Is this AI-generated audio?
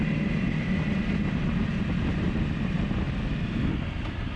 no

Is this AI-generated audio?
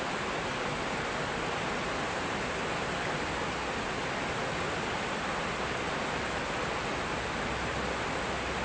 no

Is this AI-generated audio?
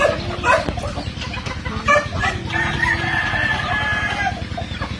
no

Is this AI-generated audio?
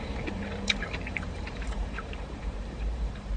yes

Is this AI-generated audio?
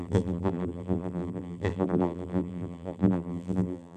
yes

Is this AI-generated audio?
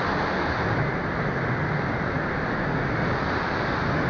no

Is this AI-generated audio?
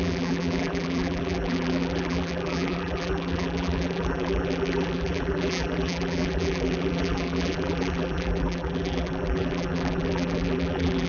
yes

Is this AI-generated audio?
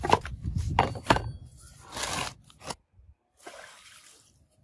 yes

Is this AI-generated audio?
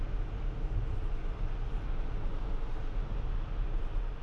no